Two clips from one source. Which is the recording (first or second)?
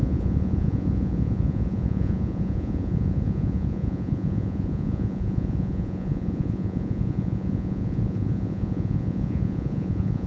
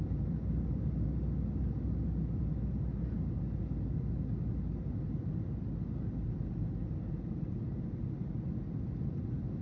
second